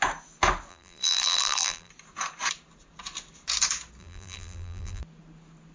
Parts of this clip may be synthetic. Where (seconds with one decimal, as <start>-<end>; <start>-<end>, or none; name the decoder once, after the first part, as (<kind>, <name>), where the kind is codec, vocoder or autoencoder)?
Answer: 0.7-1.9 (vocoder, BigVGAN v2); 4.0-5.0